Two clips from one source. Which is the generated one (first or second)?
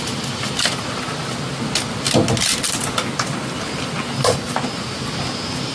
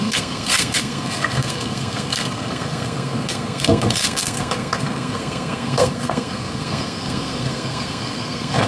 second